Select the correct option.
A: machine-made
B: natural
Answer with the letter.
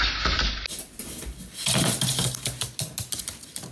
B